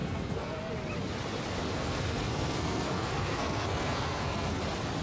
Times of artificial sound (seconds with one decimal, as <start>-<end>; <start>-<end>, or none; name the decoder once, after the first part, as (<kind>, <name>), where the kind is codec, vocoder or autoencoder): 0.0-0.7 (codec, SNAC); 1.6-4.6